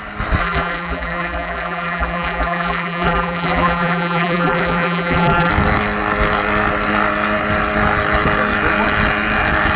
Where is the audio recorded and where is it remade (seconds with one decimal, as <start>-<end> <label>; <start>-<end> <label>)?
0.0-0.4 recorded; 0.4-5.5 remade; 5.5-9.8 recorded

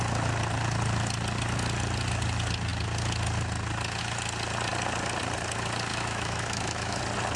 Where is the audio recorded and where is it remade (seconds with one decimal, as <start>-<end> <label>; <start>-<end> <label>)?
0.0-5.9 recorded; 5.9-7.0 remade; 7.0-7.4 recorded